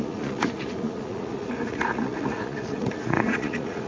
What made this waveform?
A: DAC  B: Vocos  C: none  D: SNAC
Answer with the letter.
B